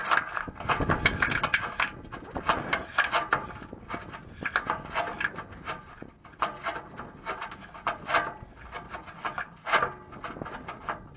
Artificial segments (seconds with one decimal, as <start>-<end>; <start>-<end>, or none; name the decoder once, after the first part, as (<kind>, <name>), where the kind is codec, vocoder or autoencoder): none